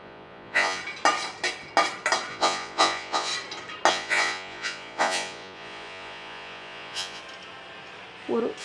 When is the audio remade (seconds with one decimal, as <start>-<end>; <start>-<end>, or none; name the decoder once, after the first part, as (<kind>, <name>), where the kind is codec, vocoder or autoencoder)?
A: 0.0-0.8 (vocoder, Vocos); 2.3-3.3; 3.9-7.2